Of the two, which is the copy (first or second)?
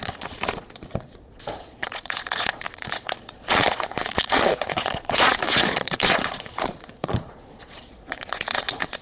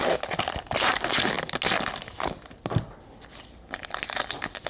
first